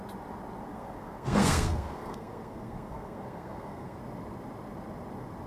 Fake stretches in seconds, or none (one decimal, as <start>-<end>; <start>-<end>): 0.7-4.0